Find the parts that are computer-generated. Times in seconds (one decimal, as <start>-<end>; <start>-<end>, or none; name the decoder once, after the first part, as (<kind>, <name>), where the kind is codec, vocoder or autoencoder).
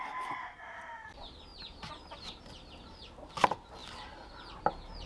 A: none